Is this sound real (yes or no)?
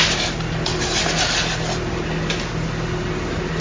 yes